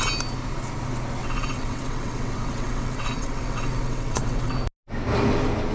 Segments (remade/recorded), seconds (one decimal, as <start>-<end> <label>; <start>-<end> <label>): 0.0-1.2 recorded; 1.2-4.6 remade; 4.6-5.7 recorded